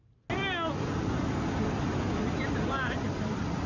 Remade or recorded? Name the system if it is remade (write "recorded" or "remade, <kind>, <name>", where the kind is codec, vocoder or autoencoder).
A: recorded